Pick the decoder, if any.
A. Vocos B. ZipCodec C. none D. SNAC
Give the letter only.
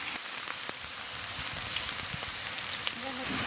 C